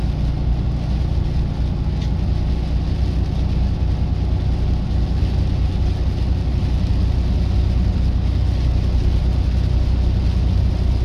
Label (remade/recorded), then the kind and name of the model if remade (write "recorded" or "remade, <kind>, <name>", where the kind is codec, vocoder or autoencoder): recorded